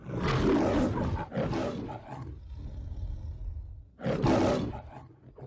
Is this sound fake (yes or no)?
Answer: no